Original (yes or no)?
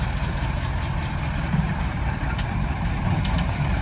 no